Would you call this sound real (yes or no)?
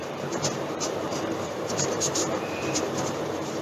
no